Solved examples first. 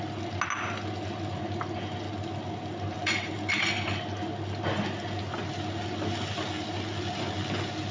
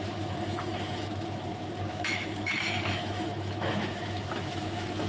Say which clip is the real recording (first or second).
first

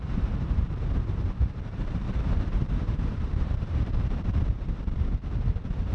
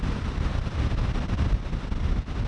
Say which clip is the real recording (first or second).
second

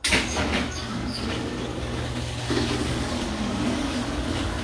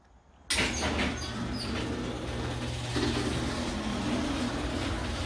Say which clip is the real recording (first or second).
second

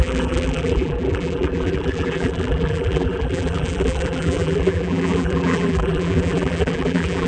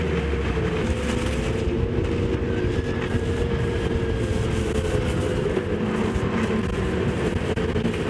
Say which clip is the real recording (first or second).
second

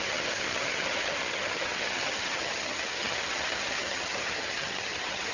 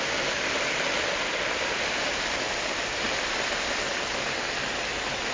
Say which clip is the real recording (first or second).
second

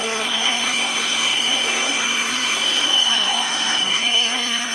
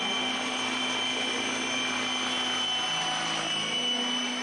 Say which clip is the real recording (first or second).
second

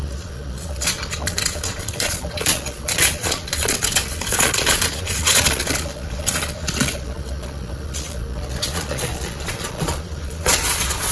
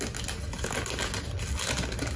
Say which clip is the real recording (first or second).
second